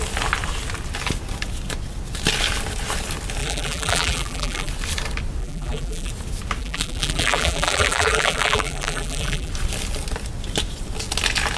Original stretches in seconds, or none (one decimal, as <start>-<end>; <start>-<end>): 0.0-3.4; 4.7-5.4; 6.1-6.6; 9.5-11.6